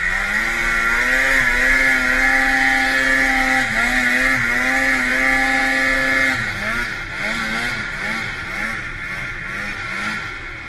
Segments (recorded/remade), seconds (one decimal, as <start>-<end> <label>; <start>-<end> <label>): 0.0-10.7 recorded